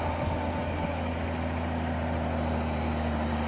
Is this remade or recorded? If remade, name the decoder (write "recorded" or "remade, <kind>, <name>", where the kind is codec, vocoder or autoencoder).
recorded